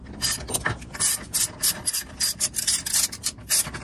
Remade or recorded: recorded